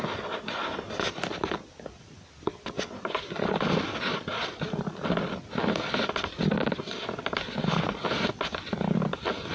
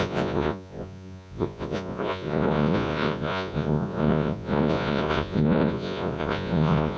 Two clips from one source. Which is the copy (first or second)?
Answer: second